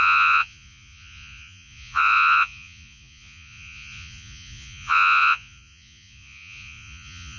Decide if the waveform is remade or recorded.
remade